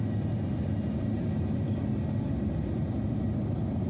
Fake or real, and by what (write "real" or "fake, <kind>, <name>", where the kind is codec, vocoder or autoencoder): real